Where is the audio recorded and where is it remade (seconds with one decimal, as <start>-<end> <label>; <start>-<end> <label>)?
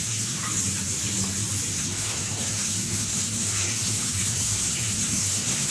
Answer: 0.0-0.4 remade; 0.4-1.7 recorded; 1.7-5.7 remade